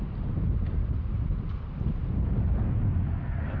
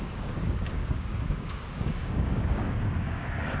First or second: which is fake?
second